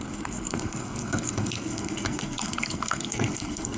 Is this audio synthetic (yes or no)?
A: yes